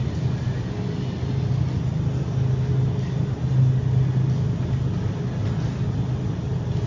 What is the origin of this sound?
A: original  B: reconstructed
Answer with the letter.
A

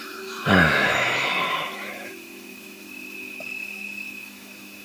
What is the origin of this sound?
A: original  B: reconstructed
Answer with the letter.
B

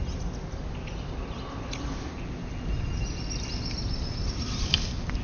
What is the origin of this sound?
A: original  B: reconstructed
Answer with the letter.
A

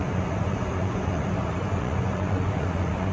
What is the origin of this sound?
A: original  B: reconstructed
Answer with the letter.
B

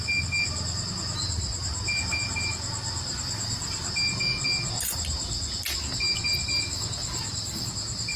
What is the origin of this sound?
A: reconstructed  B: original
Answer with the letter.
B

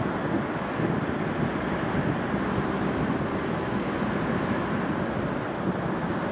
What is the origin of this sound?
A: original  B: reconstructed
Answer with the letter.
A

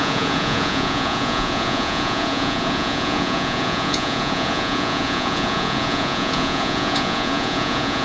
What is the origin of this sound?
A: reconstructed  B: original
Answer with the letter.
A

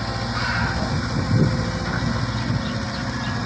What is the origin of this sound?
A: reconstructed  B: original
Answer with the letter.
B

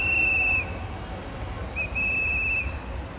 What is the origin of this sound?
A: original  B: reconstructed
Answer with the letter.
A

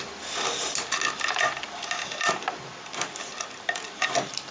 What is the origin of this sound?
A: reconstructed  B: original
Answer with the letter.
B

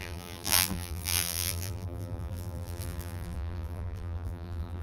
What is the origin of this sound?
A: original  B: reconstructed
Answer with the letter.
B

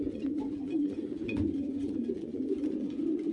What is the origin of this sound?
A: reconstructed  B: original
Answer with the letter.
A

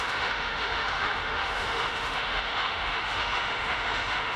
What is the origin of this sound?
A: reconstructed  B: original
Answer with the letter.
A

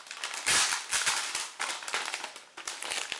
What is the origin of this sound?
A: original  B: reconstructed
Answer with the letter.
A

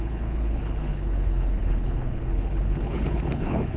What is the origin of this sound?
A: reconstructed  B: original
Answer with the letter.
A